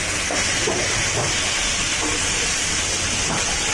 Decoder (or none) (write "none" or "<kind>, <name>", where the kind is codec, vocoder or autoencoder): none